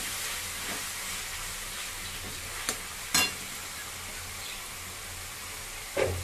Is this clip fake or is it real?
real